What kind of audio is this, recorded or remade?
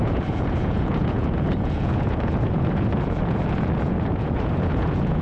remade